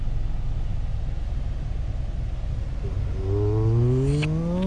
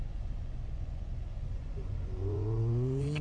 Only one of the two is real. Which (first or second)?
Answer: first